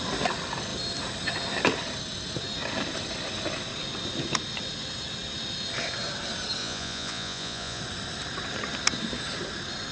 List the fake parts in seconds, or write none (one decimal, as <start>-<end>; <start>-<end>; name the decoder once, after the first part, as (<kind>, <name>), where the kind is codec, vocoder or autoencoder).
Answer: 6.6-7.8 (vocoder, Vocos)

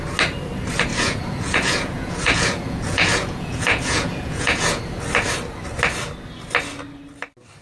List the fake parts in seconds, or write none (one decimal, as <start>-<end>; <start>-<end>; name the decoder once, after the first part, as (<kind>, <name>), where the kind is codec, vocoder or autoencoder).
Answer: 0.9-4.8 (vocoder, Vocos)

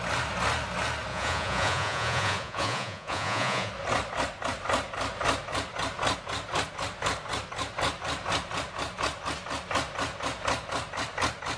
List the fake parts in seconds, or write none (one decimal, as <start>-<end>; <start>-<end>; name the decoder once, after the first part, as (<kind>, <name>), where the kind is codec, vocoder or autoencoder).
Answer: 1.1-3.7 (vocoder, Vocos)

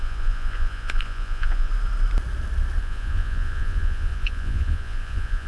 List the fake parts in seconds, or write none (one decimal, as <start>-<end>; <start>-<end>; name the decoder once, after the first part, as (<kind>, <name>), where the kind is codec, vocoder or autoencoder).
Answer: 0.0-1.7 (vocoder, Vocos); 2.8-5.5

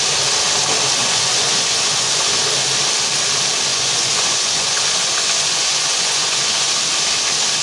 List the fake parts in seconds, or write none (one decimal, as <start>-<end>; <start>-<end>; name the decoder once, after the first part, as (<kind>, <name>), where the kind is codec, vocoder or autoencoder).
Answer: 1.0-2.3 (vocoder, Vocos); 3.7-6.7

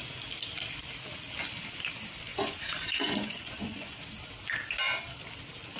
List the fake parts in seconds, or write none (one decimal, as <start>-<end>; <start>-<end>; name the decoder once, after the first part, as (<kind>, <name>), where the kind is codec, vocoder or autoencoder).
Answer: 2.3-4.0 (vocoder, Vocos)